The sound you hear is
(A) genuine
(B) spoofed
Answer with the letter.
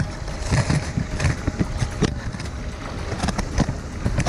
A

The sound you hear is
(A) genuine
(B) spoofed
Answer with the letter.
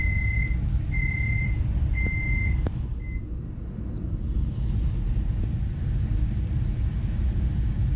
A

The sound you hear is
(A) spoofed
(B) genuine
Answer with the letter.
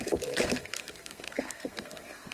A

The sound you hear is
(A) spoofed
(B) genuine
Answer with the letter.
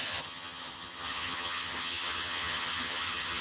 A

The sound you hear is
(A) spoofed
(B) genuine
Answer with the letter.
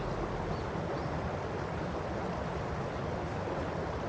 B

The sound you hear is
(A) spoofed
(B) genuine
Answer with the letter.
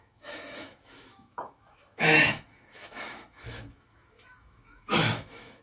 A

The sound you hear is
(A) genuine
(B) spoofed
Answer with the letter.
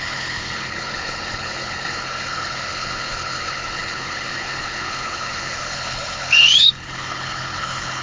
B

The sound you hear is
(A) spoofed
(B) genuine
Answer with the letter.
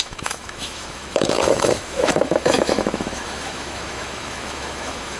A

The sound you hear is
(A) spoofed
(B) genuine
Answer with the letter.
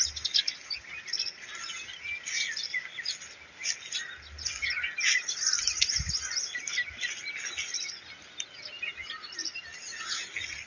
B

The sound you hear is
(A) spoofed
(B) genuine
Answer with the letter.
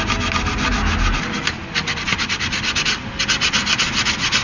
B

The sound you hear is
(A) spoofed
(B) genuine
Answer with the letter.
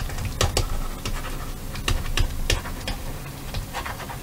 B